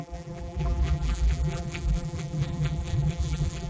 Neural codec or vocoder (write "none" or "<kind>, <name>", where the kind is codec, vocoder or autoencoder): vocoder, BigVGAN v2